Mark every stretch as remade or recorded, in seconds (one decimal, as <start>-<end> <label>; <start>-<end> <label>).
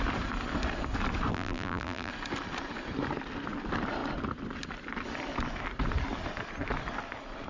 0.0-1.3 recorded; 1.3-2.1 remade; 2.1-7.5 recorded